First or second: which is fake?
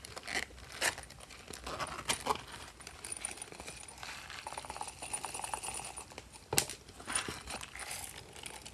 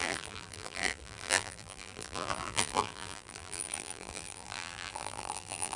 second